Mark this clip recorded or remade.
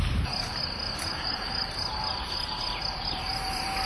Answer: remade